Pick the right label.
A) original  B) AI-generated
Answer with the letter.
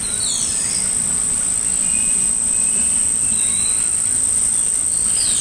B